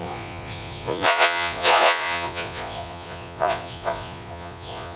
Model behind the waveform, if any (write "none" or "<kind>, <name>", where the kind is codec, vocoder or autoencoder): vocoder, Vocos